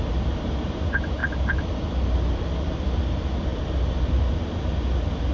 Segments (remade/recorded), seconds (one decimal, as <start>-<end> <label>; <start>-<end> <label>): 0.0-5.3 recorded